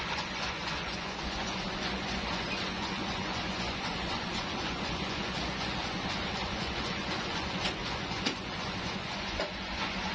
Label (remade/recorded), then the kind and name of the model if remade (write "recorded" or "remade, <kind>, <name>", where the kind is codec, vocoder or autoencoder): remade, vocoder, Vocos